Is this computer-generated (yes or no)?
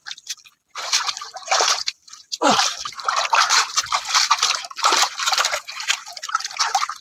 no